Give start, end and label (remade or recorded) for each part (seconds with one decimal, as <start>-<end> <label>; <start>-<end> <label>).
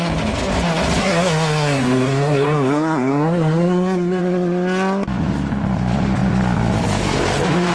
0.0-1.0 recorded; 1.0-4.2 remade; 4.2-7.7 recorded